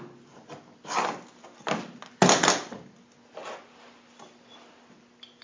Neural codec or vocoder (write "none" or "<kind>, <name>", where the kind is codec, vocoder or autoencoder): none